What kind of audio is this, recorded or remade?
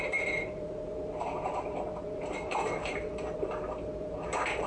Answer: remade